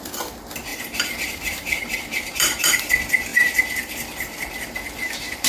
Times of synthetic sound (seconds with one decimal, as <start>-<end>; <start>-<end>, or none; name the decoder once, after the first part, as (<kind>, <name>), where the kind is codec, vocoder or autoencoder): 0.7-2.9 (vocoder, BigVGAN v2)